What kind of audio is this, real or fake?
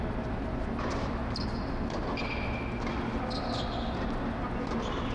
real